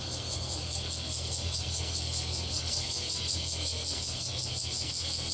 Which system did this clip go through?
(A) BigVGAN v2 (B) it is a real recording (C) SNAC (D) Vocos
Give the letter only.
C